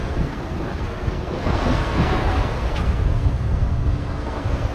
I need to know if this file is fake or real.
fake